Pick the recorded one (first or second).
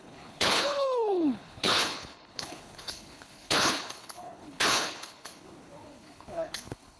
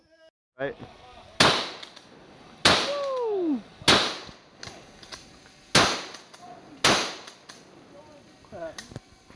second